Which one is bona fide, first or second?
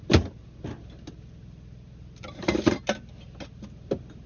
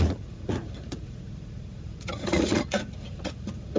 first